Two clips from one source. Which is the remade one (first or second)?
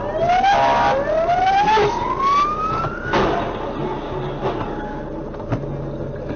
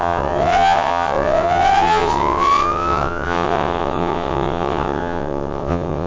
second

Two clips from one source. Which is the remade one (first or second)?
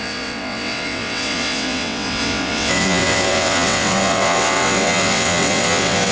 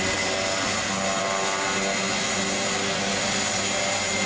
first